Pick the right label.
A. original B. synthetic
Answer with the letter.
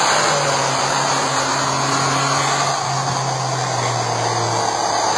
A